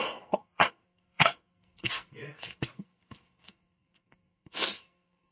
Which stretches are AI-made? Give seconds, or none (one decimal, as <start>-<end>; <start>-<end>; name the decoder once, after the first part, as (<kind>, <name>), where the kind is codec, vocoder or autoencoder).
0.0-5.3 (codec, SNAC)